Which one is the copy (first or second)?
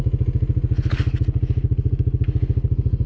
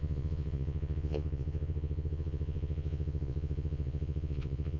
second